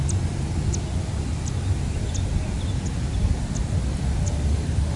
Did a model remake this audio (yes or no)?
no